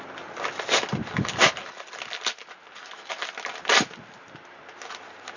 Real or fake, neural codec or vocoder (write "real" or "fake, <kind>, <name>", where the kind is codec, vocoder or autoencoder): real